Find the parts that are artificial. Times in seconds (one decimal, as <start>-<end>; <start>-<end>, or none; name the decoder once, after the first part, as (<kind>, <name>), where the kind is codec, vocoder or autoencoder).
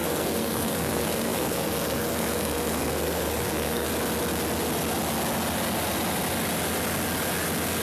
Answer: 0.0-3.9 (codec, SNAC)